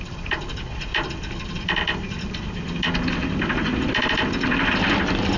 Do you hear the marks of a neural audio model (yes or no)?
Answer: no